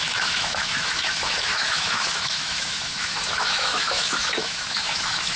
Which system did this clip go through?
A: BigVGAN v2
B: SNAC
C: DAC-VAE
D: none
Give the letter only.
C